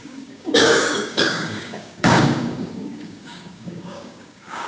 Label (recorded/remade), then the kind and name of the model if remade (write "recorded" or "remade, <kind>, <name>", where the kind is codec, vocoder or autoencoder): remade, codec, DAC